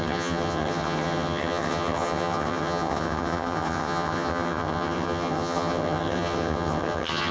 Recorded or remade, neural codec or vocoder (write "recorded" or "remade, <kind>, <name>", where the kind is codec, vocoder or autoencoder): remade, vocoder, HiFi-GAN